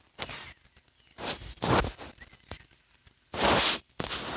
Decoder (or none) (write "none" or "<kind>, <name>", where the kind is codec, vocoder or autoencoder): none